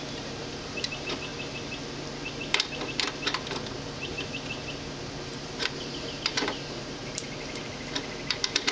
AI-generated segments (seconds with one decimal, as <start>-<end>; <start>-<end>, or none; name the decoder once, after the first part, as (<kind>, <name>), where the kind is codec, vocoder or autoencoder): 0.0-1.3 (vocoder, BigVGAN v2); 3.7-8.7